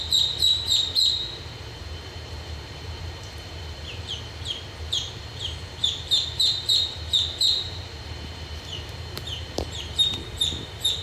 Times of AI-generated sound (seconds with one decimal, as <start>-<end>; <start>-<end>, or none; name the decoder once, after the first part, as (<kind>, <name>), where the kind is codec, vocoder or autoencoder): 0.0-4.1 (vocoder, BigVGAN v2); 5.0-11.0